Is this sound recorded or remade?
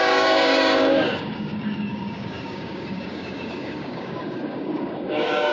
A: remade